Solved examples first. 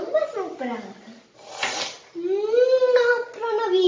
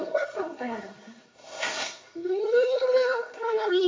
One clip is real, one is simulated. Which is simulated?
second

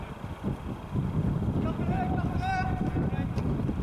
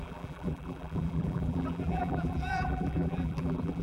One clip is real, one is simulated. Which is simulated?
second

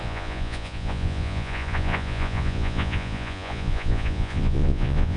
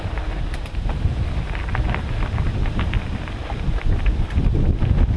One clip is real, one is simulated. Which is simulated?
first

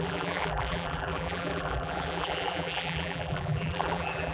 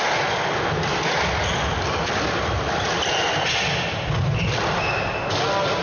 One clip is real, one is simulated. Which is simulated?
first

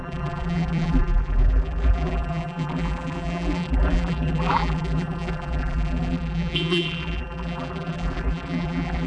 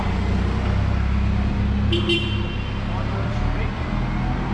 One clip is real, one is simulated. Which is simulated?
first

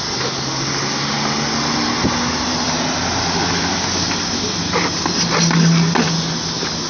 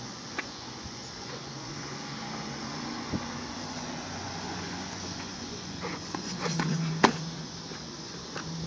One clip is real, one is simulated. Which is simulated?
second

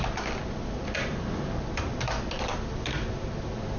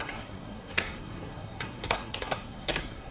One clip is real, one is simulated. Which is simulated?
second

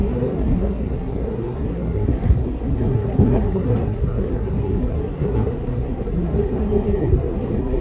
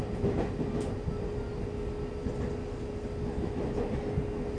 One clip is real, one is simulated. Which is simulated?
first